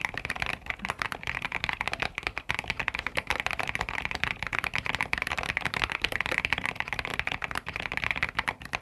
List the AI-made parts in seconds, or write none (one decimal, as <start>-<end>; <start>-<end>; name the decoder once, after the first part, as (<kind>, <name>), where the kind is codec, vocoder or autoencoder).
0.0-7.1 (vocoder, BigVGAN v2); 7.7-8.8

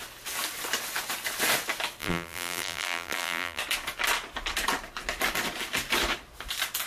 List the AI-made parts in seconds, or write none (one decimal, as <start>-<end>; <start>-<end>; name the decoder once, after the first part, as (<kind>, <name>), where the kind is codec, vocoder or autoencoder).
2.0-3.6 (vocoder, BigVGAN v2)